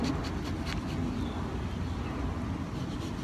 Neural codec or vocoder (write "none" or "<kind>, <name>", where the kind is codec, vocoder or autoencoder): none